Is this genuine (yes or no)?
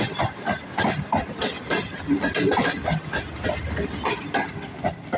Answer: yes